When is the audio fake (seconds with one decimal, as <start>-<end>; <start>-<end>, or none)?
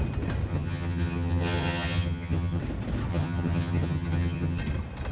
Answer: 0.5-2.6; 3.1-4.6